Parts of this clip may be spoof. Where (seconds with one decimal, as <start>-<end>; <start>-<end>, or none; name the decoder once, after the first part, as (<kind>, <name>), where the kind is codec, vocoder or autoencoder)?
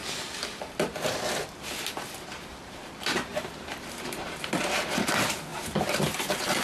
0.0-2.9 (vocoder, BigVGAN v2); 3.3-4.2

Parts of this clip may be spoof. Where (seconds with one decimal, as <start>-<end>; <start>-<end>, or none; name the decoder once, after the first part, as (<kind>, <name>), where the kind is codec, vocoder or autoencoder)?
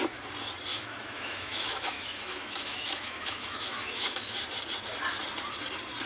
0.7-4.4 (autoencoder, DAC-VAE)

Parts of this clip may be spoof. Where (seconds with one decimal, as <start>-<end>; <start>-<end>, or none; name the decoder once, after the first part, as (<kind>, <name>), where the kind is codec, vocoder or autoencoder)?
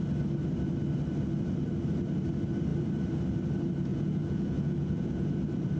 3.9-5.3 (vocoder, Vocos)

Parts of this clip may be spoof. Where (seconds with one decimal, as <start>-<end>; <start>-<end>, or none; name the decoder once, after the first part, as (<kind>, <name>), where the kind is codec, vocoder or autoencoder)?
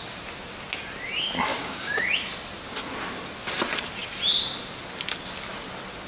1.5-2.1 (codec, DAC)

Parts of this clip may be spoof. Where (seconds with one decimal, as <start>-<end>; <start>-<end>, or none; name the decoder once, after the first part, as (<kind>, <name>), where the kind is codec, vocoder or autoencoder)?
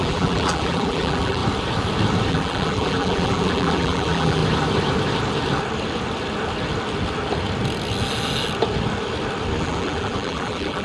0.0-1.4 (vocoder, BigVGAN v2); 2.3-4.4; 9.6-10.8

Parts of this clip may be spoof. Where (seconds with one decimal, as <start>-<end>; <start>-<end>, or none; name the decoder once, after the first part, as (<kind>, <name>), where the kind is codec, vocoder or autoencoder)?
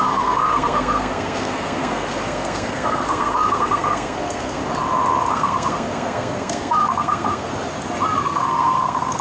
0.0-4.6 (codec, SNAC); 5.3-7.5; 8.2-9.2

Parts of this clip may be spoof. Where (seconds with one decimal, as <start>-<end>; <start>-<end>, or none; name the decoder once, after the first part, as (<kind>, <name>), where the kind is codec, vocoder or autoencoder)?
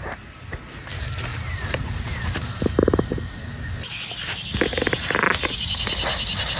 1.3-3.4 (vocoder, BigVGAN v2)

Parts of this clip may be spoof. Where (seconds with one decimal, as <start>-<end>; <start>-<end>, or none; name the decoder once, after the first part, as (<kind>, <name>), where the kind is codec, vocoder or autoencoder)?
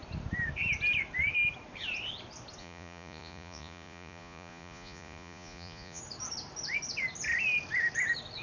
2.6-6.0 (vocoder, Vocos)